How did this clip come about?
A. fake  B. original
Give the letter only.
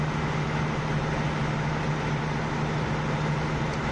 B